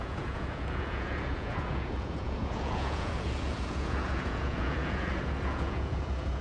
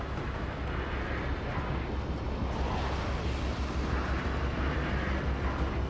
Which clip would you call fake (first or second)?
first